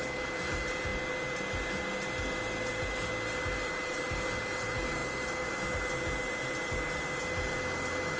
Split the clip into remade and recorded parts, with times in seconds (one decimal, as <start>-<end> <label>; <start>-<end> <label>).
0.0-8.2 recorded

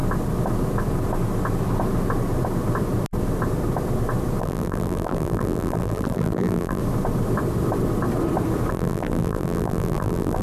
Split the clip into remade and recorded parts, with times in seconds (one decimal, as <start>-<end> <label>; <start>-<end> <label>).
0.0-4.4 recorded; 4.4-6.8 remade; 6.8-8.7 recorded; 8.7-10.4 remade

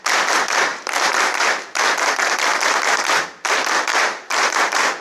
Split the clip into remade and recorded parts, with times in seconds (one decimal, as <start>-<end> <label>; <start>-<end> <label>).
0.0-0.7 recorded; 0.7-1.8 remade; 1.8-3.9 recorded; 3.9-4.6 remade; 4.6-5.0 recorded

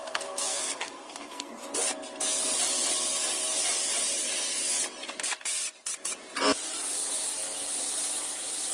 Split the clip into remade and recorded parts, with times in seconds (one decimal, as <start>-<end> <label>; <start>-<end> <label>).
0.0-1.5 remade; 1.5-8.7 recorded

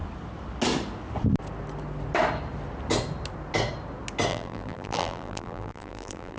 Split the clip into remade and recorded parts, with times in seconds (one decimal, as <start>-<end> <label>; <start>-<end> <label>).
0.0-4.3 recorded; 4.3-6.4 remade

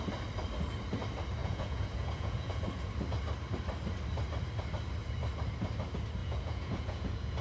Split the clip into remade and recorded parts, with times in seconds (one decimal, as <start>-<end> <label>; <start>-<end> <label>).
0.0-1.4 recorded; 1.4-2.6 remade; 2.6-6.2 recorded; 6.2-7.4 remade

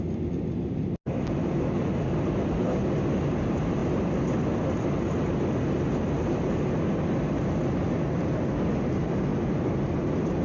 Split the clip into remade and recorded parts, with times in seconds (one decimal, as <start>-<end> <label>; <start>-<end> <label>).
0.0-10.4 recorded